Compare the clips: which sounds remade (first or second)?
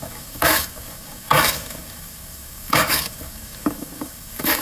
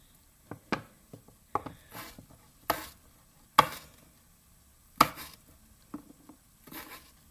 first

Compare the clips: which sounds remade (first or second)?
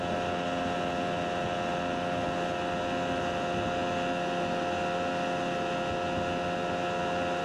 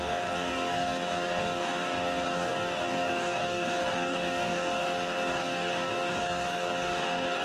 second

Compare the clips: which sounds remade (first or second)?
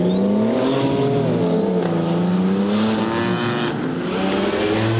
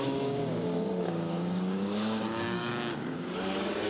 second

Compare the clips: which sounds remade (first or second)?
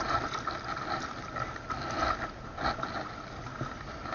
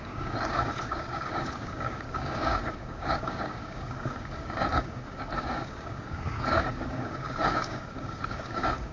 second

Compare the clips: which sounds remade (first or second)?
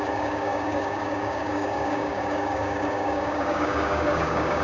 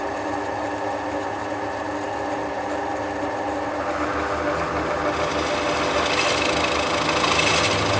first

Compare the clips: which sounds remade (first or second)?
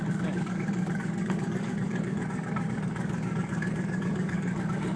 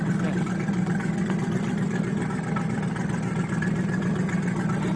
first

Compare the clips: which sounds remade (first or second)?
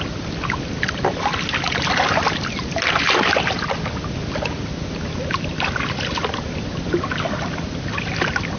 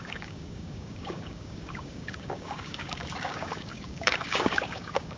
second